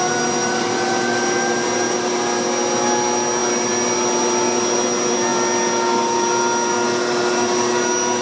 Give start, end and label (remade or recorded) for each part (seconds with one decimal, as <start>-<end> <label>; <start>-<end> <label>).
0.0-0.4 recorded; 0.4-2.1 remade; 2.1-8.2 recorded